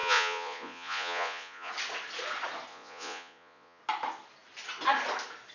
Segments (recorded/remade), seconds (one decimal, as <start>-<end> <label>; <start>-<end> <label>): 0.0-1.7 remade; 1.7-2.7 recorded; 2.7-3.8 remade; 3.8-5.5 recorded